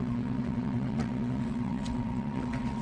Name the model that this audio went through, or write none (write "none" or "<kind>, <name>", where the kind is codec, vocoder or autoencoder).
vocoder, WaveNeXt